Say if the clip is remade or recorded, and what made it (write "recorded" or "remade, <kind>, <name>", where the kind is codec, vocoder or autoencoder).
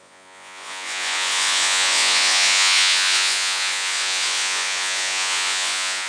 remade, vocoder, Vocos